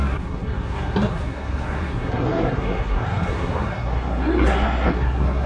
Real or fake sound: fake